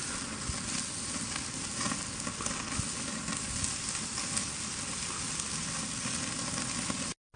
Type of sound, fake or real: real